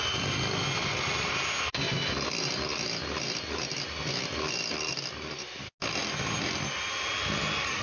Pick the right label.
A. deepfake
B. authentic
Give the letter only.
B